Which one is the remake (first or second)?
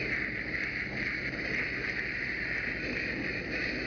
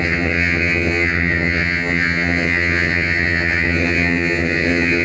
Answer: second